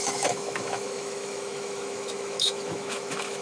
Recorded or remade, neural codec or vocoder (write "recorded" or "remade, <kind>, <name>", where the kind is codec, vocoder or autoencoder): remade, autoencoder, DAC-VAE